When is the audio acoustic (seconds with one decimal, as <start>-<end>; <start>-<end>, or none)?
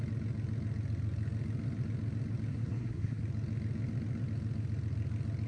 0.0-2.5; 3.2-5.5